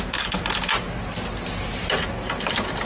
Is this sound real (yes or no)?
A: yes